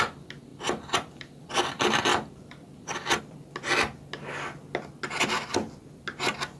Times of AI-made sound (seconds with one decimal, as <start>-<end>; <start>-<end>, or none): 0.5-1.7; 2.1-3.2

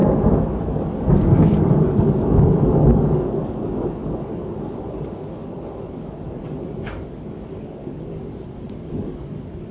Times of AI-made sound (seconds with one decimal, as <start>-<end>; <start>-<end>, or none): 0.0-9.7

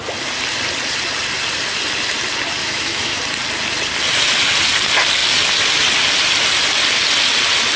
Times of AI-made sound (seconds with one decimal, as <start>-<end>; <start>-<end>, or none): 2.6-3.2

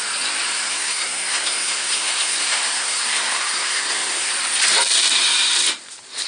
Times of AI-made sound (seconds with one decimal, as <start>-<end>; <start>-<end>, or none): 0.5-4.3